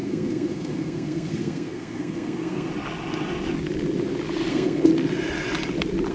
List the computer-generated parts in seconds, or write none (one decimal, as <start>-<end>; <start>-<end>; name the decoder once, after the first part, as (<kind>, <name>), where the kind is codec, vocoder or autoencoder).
0.0-2.7 (codec, SNAC); 4.5-4.9